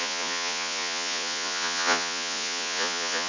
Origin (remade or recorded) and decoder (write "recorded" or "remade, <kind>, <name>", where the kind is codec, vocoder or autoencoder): remade, vocoder, Vocos